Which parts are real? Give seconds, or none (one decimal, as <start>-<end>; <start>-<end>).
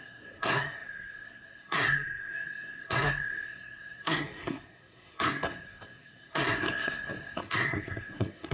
none